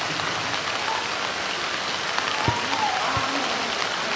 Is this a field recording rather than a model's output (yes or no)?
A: yes